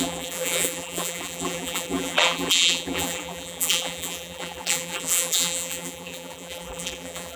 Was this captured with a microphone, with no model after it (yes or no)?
no